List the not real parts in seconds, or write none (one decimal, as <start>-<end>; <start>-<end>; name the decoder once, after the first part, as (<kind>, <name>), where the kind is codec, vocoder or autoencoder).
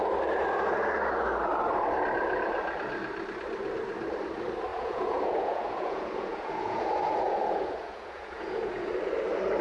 4.7-8.9 (vocoder, Vocos)